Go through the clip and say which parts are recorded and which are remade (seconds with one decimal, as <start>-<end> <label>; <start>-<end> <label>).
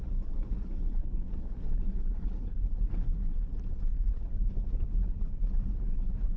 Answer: 0.0-3.5 remade; 3.5-4.1 recorded; 4.1-6.4 remade